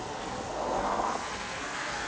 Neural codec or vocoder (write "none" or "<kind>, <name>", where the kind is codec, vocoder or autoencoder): codec, SNAC